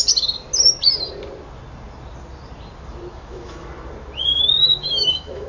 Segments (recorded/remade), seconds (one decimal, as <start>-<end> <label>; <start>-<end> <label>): 0.0-3.1 recorded; 3.1-3.7 remade; 3.7-4.3 recorded; 4.3-5.5 remade